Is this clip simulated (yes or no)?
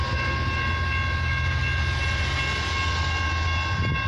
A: no